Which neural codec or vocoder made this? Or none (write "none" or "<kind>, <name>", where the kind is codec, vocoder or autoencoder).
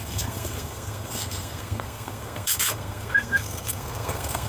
codec, SNAC